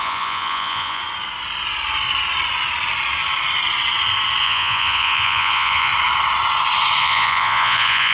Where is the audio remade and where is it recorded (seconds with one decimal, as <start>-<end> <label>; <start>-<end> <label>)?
0.0-1.0 remade; 1.0-4.4 recorded; 4.4-5.9 remade; 5.9-7.0 recorded; 7.0-8.1 remade